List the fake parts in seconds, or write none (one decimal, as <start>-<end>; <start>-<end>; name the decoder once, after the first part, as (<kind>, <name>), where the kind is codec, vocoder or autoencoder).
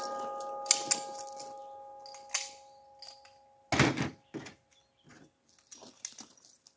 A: none